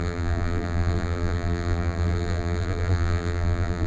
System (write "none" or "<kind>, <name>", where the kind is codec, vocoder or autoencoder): vocoder, BigVGAN v2